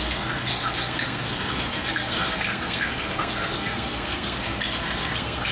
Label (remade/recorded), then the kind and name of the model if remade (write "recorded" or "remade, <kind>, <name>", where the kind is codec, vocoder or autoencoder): remade, codec, SNAC